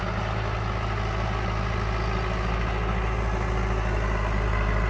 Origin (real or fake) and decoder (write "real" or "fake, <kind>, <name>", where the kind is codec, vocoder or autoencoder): real